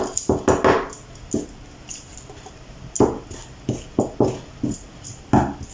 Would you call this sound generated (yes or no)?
no